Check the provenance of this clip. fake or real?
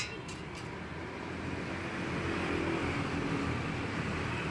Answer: real